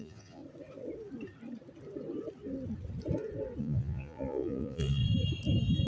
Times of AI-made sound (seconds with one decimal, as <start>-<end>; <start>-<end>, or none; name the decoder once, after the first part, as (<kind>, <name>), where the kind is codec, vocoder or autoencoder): 0.0-0.4 (vocoder, Vocos); 3.6-5.0